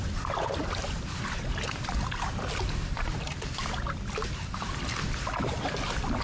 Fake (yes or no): no